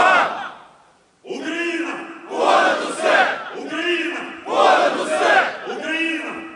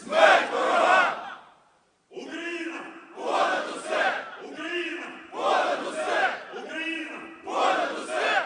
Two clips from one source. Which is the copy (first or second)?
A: second